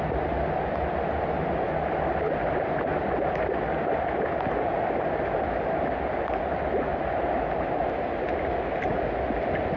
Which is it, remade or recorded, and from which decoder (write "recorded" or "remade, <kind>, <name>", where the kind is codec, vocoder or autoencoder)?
recorded